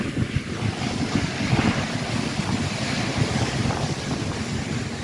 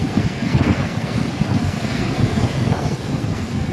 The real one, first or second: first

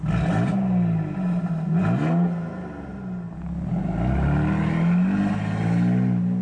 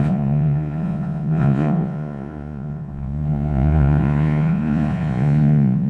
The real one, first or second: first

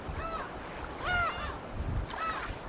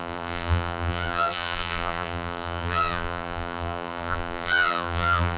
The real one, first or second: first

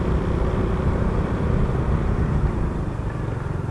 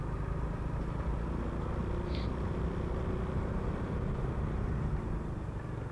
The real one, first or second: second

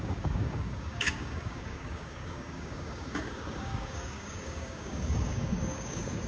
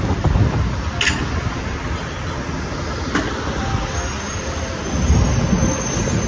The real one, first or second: second